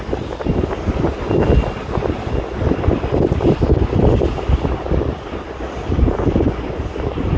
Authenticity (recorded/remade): recorded